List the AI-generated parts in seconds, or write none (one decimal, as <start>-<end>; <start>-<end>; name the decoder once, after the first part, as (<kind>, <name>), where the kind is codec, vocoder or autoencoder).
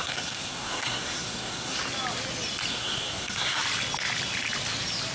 0.0-1.8 (codec, SNAC); 2.7-3.6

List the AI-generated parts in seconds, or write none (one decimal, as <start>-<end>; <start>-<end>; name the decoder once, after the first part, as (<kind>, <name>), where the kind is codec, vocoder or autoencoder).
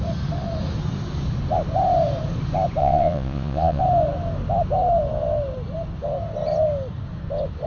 2.8-3.8 (vocoder, Vocos)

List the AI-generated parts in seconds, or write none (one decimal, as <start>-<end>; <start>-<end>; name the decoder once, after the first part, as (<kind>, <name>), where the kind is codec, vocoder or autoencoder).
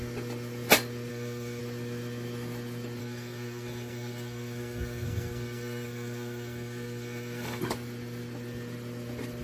1.1-1.6 (codec, SNAC); 3.0-7.6